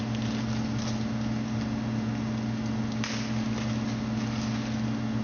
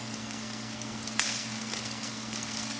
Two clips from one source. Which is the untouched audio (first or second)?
first